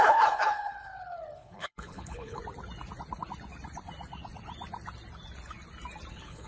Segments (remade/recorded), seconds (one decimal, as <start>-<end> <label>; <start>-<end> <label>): 0.0-2.4 remade; 2.4-6.1 recorded; 6.1-6.5 remade